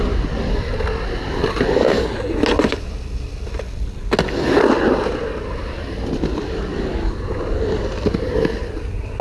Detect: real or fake real